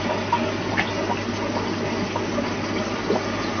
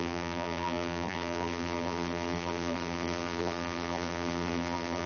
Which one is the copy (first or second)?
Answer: second